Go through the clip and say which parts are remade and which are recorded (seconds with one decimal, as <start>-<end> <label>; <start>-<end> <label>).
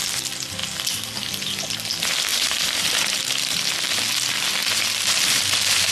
0.0-2.3 recorded; 2.3-3.6 remade; 3.6-4.6 recorded; 4.6-5.9 remade